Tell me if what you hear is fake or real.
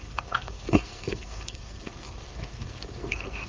fake